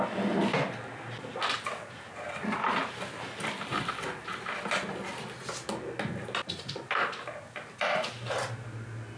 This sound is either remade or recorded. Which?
recorded